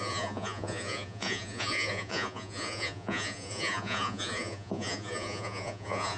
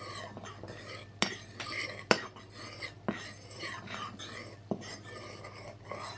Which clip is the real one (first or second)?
second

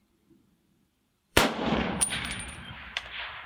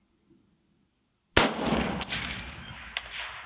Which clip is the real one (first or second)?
second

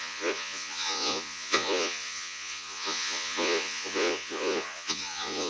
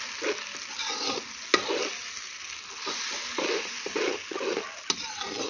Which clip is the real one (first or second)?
second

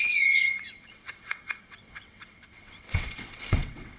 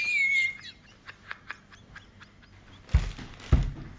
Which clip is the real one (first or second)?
second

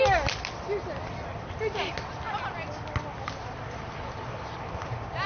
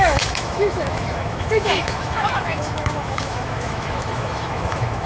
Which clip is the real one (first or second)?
first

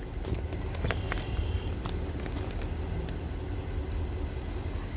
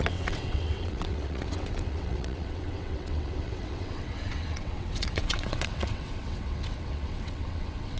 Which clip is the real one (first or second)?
first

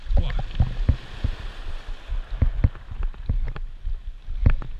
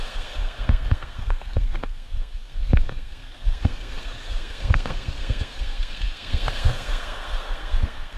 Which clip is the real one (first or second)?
first